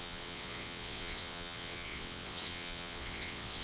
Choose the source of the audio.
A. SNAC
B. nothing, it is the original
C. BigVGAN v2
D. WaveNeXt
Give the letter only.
D